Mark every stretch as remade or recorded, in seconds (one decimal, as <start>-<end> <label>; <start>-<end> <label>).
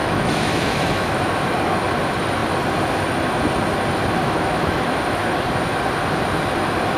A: 0.0-1.3 remade; 1.3-4.2 recorded; 4.2-4.8 remade; 4.8-7.0 recorded